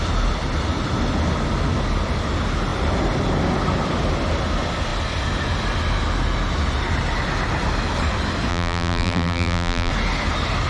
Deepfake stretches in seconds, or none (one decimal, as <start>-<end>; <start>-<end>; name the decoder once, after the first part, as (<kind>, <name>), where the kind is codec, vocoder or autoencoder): 8.5-9.9 (vocoder, BigVGAN v2)